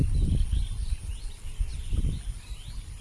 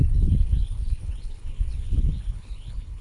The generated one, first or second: second